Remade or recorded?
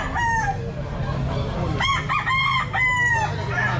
recorded